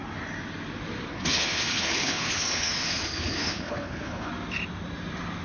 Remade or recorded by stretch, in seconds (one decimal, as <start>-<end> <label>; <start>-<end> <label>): 0.0-1.1 recorded; 1.1-4.3 remade; 4.3-5.4 recorded